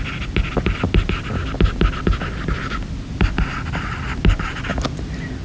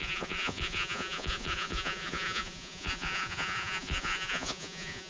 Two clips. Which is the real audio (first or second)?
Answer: first